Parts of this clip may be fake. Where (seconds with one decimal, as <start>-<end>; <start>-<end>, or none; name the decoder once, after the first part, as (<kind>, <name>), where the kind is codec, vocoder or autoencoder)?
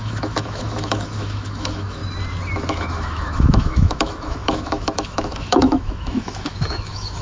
0.0-2.0 (autoencoder, DAC-VAE); 2.7-7.2